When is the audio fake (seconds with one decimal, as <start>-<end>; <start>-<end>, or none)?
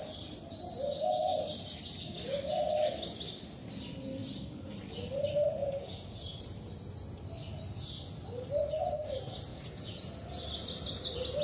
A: 5.6-6.4; 9.5-10.1